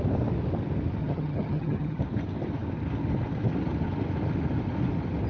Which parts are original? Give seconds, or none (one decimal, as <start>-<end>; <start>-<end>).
0.0-1.0; 2.0-5.3